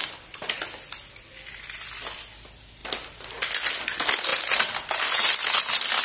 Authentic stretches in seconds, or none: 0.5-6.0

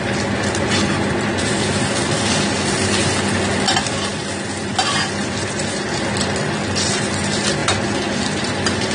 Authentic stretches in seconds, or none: 0.0-8.9

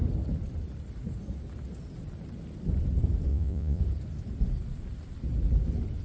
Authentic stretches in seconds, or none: 0.0-3.3; 3.8-6.0

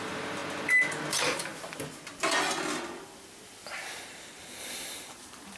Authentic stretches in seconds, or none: 0.4-1.1; 1.5-4.6

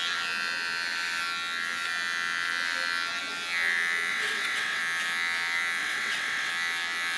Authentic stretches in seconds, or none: 0.0-4.1; 4.8-5.8; 6.5-7.2

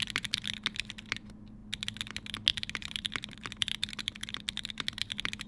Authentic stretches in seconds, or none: 0.0-2.5; 5.1-5.5